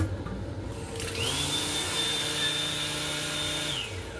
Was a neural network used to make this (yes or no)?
no